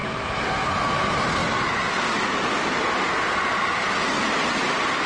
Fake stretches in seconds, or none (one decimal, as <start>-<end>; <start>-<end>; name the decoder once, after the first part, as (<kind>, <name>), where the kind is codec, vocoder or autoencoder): none